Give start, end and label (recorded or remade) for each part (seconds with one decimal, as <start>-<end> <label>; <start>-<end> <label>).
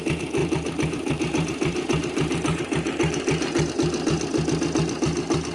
0.0-0.4 recorded; 0.4-3.7 remade; 3.7-5.5 recorded